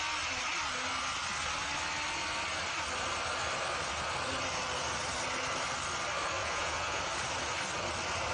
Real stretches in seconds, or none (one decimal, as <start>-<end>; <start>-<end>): 0.0-6.4; 7.0-8.3